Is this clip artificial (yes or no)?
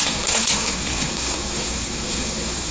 yes